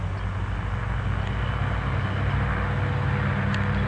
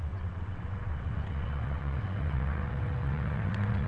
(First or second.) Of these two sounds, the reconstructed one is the second